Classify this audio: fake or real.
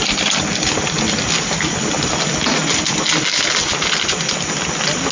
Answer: real